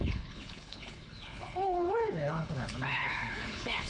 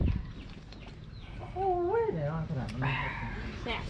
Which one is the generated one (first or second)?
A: first